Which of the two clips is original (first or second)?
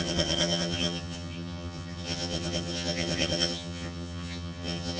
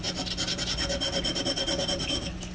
second